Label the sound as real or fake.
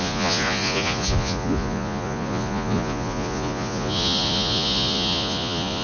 fake